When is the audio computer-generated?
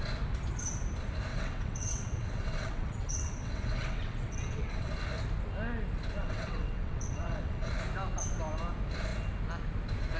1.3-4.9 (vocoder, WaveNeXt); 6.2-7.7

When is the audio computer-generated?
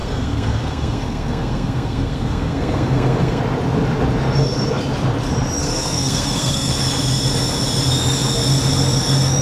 0.0-3.4 (codec, SNAC); 5.6-6.7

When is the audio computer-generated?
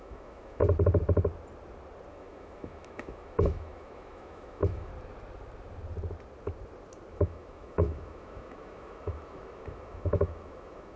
0.0-0.6 (autoencoder, DAC-VAE); 2.1-4.9; 7.1-11.0